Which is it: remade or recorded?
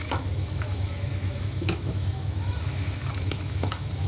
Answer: remade